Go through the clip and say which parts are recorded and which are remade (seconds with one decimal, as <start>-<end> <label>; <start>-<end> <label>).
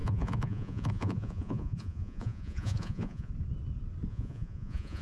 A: 0.0-3.3 remade; 3.3-4.1 recorded; 4.1-5.0 remade